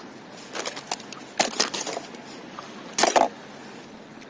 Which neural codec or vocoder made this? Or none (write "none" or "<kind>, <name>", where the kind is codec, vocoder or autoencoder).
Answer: none